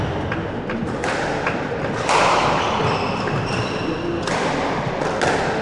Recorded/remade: recorded